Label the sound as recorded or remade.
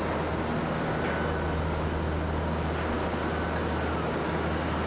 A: recorded